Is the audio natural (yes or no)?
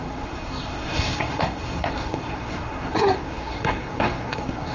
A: no